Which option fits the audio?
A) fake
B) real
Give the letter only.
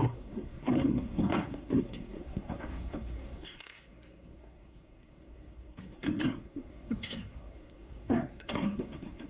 A